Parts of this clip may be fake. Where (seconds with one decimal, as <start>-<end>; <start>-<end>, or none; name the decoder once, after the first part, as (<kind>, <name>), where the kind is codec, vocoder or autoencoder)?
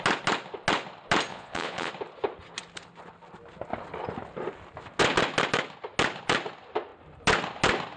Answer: 1.3-1.9 (vocoder, Vocos)